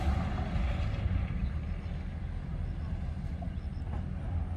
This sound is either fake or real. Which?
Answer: real